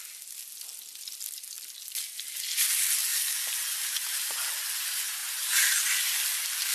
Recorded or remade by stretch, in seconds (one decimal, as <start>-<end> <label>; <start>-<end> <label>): 0.0-3.1 recorded; 3.1-4.3 remade; 4.3-6.7 recorded

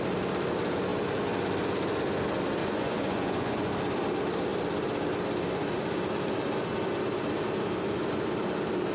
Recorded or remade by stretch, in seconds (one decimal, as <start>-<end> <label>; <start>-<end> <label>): 0.0-2.6 recorded; 2.6-3.7 remade; 3.7-8.9 recorded

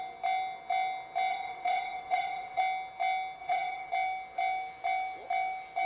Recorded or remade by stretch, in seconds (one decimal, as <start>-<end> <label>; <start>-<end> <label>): 0.0-1.3 recorded; 1.3-2.6 remade; 2.6-3.4 recorded; 3.4-3.9 remade; 3.9-5.9 recorded

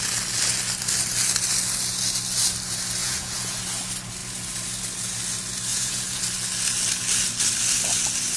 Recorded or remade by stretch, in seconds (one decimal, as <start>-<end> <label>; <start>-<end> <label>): 0.0-3.0 recorded; 3.0-3.6 remade; 3.6-5.7 recorded; 5.7-6.2 remade; 6.2-8.4 recorded

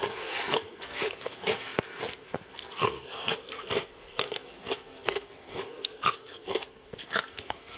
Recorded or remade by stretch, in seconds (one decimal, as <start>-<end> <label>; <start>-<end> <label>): 0.0-7.8 remade